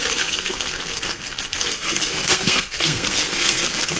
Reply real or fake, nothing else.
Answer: fake